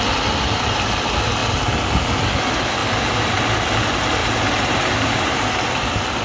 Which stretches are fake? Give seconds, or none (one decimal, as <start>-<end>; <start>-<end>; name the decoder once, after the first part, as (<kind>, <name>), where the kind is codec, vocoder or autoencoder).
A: 2.8-3.4 (vocoder, BigVGAN v2); 4.2-5.5